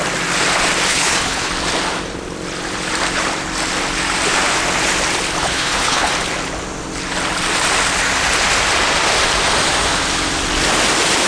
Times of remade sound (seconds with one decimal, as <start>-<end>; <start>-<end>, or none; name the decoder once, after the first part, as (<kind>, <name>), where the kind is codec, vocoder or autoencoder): 0.9-1.5 (codec, HILCodec); 5.4-6.1